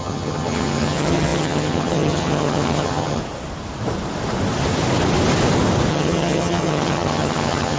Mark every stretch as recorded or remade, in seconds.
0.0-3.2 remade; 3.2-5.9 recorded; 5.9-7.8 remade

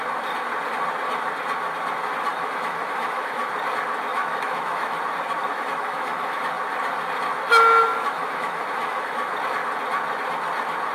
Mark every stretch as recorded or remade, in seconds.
0.0-2.3 recorded; 2.3-3.5 remade; 3.5-4.1 recorded; 4.1-5.0 remade; 5.0-5.5 recorded; 5.5-6.4 remade; 6.4-7.9 recorded; 7.9-9.3 remade; 9.3-10.9 recorded

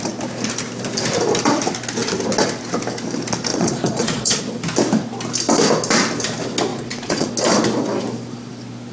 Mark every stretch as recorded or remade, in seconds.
0.0-3.5 recorded; 3.5-4.4 remade; 4.4-6.7 recorded; 6.7-7.3 remade; 7.3-8.9 recorded

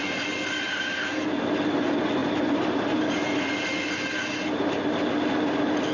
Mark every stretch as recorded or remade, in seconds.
0.0-2.2 recorded; 2.2-3.0 remade; 3.0-5.9 recorded

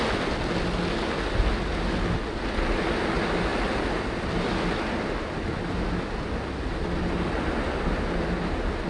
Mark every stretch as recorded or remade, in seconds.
0.0-8.9 recorded

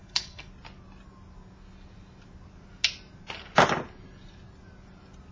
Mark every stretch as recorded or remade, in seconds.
0.0-0.5 remade; 0.5-5.3 recorded

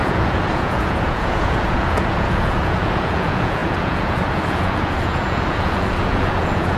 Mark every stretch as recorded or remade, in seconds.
0.0-6.8 remade